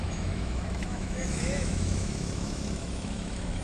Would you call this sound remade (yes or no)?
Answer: yes